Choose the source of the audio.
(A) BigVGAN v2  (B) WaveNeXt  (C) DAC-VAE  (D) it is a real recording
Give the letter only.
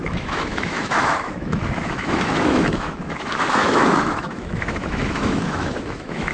C